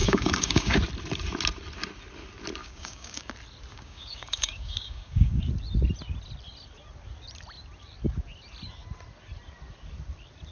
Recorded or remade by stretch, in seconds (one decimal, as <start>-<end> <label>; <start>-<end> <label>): 0.0-0.8 remade; 0.8-2.6 recorded; 2.6-3.3 remade; 3.3-3.7 recorded; 3.7-5.4 remade; 5.4-10.5 recorded